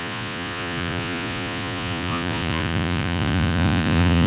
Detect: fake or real fake